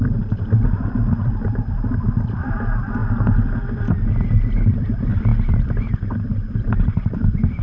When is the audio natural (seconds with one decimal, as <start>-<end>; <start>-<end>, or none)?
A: 3.0-4.1